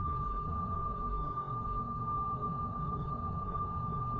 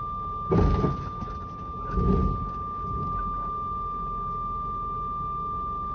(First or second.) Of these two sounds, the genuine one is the second